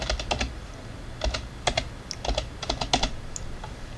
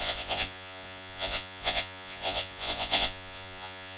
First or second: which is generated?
second